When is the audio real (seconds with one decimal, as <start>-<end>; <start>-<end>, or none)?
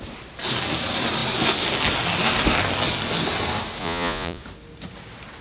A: 0.0-3.8; 4.4-5.4